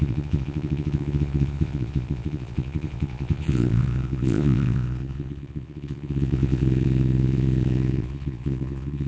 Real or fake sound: fake